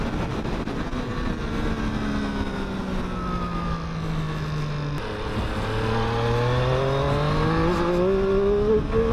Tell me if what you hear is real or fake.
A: real